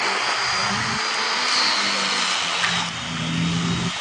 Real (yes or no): yes